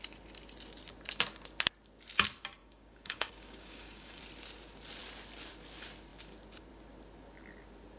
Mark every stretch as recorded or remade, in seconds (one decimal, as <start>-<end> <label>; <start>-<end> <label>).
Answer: 0.0-2.6 recorded; 2.6-4.2 remade; 4.2-8.0 recorded